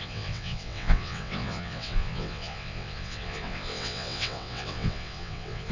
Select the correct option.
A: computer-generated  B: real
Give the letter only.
A